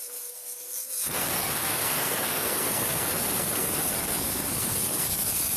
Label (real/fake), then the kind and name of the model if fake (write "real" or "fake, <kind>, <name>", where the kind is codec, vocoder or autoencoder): fake, codec, SNAC